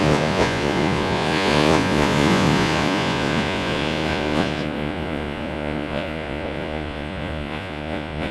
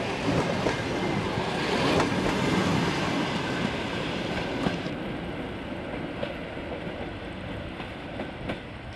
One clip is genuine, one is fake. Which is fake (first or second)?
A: first